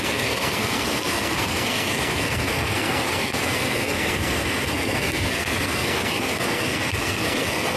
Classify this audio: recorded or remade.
remade